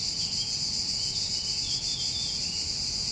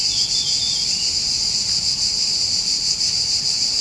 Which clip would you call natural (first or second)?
first